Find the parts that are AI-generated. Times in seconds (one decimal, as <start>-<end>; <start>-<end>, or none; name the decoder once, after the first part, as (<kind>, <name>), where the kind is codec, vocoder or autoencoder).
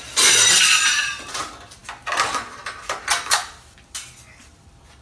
0.0-1.8 (vocoder, BigVGAN v2); 4.4-5.0